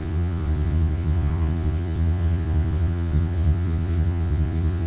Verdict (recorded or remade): remade